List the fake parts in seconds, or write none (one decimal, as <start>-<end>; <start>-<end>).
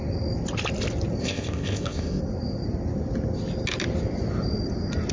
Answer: 1.2-2.2